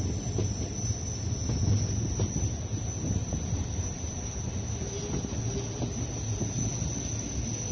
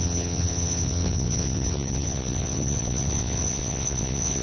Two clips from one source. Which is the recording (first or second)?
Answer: first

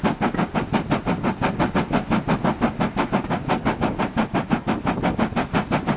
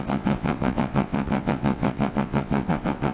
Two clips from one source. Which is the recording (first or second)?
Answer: first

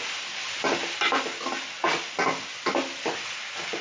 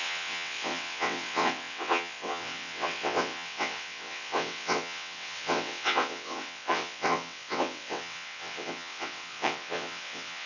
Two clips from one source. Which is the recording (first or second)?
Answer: first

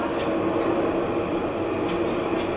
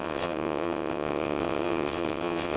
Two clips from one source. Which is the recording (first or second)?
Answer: first